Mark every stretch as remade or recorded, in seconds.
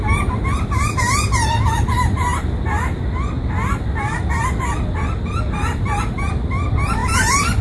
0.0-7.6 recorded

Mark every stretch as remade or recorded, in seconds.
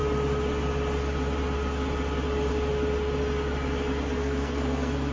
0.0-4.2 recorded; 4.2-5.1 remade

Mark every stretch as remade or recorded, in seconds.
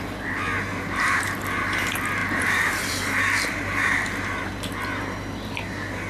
0.0-0.7 recorded; 0.7-1.5 remade; 1.5-2.2 recorded; 2.2-4.5 remade; 4.5-6.1 recorded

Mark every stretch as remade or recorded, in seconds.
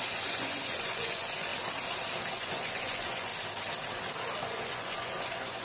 0.0-1.5 remade; 1.5-2.3 recorded; 2.3-3.3 remade; 3.3-4.4 recorded; 4.4-5.6 remade